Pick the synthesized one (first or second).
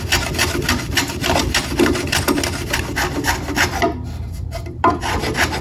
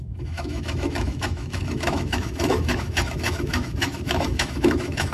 second